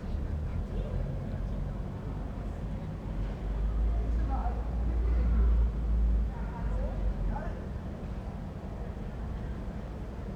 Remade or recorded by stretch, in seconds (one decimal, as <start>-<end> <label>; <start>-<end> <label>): 0.0-0.5 recorded; 0.5-1.6 remade; 1.6-10.4 recorded